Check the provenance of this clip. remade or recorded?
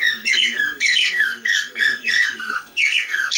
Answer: remade